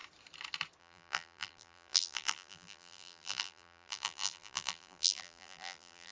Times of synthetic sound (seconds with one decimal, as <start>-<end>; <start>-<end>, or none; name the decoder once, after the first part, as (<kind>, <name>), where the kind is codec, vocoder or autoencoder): 0.8-6.1 (vocoder, BigVGAN v2)